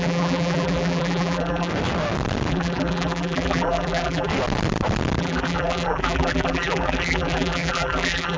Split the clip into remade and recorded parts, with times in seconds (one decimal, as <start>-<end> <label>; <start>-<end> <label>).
0.0-1.7 remade; 1.7-2.5 recorded; 2.5-4.3 remade; 4.3-5.2 recorded; 5.2-8.4 remade